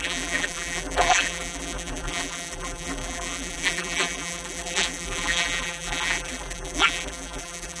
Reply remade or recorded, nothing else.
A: remade